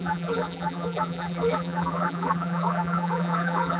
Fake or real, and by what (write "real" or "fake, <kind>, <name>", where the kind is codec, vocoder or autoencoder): fake, vocoder, BigVGAN v2